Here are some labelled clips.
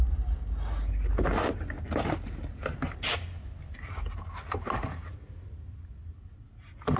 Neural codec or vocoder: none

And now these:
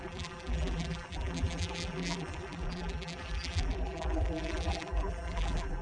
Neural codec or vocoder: vocoder, BigVGAN v2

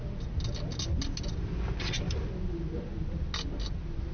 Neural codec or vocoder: none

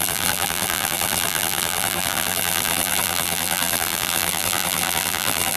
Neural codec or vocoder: vocoder, BigVGAN v2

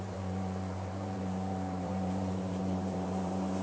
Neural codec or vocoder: vocoder, BigVGAN v2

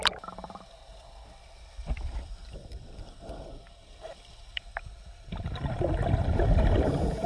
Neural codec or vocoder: vocoder, BigVGAN v2